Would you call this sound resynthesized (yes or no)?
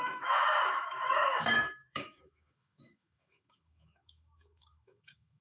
yes